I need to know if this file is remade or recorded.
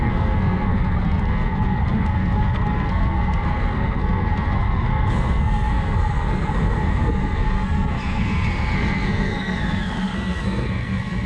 remade